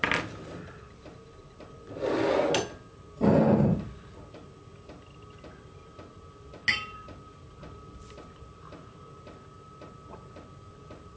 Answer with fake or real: real